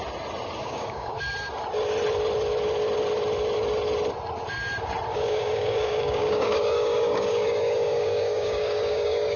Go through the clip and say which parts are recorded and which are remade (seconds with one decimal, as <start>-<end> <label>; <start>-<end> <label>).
0.0-0.6 recorded; 0.6-1.2 remade; 1.2-5.1 recorded; 5.1-9.4 remade